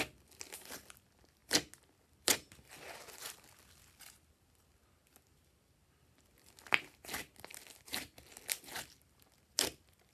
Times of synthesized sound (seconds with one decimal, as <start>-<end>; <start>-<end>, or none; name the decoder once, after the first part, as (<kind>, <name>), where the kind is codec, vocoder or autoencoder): none